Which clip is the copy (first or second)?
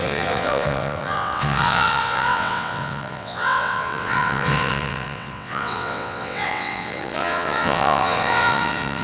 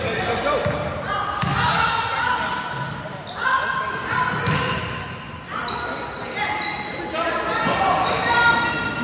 first